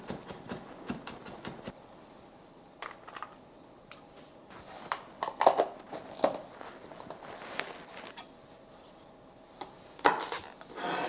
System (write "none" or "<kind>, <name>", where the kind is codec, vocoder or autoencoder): none